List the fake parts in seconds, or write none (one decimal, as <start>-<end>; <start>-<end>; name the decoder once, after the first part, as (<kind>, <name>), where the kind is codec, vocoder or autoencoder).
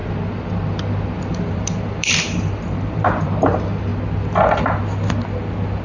1.5-3.9 (vocoder, BigVGAN v2)